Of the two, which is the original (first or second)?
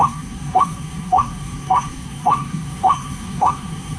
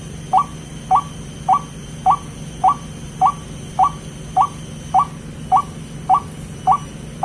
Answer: second